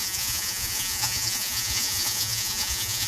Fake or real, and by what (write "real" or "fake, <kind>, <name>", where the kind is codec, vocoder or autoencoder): fake, vocoder, Vocos